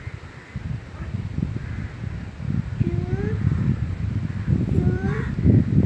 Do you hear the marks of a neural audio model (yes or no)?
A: yes